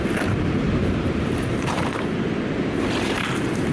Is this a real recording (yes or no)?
no